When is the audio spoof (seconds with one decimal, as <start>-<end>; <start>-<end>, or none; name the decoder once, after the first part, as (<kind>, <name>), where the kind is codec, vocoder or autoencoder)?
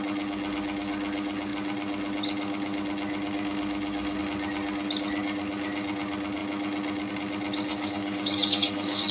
7.7-9.1 (codec, DAC)